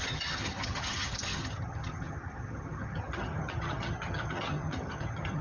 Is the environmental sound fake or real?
fake